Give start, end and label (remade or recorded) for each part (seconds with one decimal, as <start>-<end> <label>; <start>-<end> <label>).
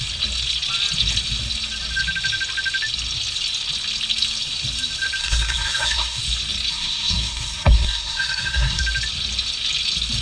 0.0-5.2 recorded; 5.2-6.2 remade; 6.2-6.7 recorded; 6.7-8.8 remade; 8.8-10.2 recorded